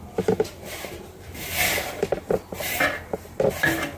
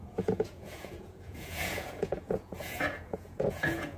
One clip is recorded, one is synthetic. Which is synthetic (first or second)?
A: second